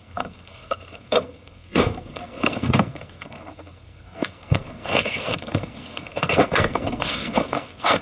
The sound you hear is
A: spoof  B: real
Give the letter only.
A